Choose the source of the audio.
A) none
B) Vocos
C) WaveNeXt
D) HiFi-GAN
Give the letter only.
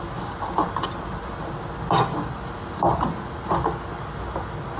A